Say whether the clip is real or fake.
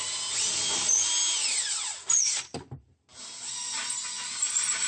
real